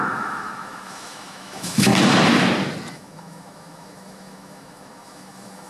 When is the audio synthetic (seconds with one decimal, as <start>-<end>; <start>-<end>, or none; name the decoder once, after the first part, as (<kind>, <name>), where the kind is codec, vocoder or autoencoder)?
0.0-1.9 (autoencoder, DAC-VAE); 2.9-5.7

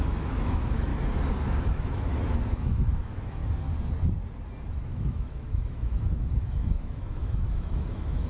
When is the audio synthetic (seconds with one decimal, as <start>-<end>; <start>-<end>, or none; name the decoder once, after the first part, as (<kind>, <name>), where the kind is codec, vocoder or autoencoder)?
0.0-0.9 (autoencoder, DAC-VAE); 1.7-3.4; 4.7-8.3

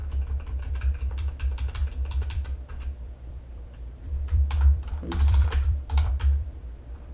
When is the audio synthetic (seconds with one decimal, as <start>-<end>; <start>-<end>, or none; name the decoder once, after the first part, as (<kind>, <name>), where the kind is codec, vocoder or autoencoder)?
0.6-7.1 (vocoder, BigVGAN v2)

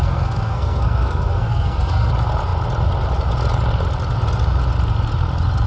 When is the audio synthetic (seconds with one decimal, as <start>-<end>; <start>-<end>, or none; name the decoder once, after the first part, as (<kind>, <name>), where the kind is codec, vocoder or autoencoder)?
0.0-2.1 (codec, SNAC)

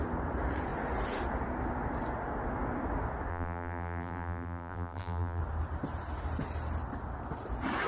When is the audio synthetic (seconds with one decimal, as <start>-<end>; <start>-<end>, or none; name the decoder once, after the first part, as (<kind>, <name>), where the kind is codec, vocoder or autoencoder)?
3.3-5.4 (vocoder, BigVGAN v2)

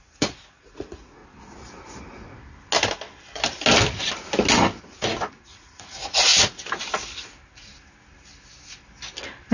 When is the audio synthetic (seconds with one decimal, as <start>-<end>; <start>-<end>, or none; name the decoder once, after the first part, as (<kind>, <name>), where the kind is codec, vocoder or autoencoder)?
0.0-1.2 (vocoder, Vocos); 4.8-6.3